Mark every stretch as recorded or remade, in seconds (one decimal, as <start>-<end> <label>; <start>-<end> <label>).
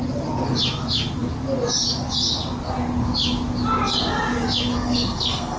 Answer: 0.0-4.7 recorded; 4.7-5.6 remade